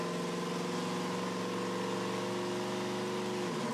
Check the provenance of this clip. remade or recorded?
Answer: recorded